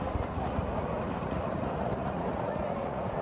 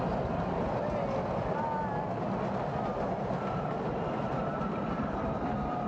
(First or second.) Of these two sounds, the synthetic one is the first